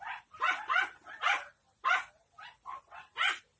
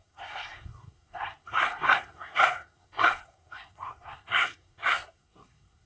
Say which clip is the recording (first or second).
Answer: first